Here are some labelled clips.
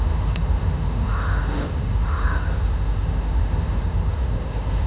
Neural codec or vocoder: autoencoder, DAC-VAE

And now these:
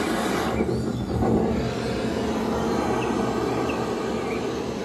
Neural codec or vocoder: none